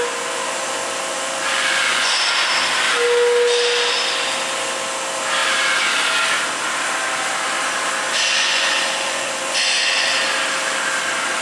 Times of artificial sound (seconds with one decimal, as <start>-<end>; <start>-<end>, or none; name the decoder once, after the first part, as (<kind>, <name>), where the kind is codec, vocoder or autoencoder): 1.1-2.1 (vocoder, Vocos); 8.3-10.1